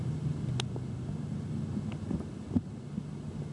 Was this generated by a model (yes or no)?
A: no